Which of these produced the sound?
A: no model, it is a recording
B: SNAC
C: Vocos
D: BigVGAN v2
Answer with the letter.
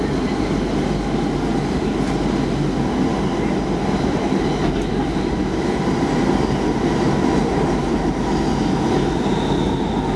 A